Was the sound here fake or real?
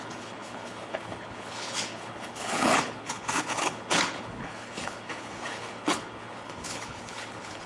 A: fake